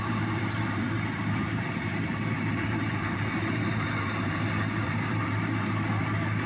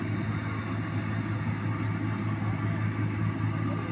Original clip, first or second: second